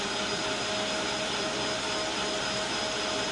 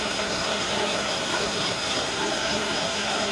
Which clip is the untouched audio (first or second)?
first